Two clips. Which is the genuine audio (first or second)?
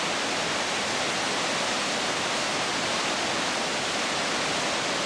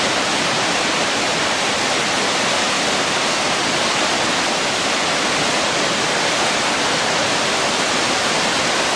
first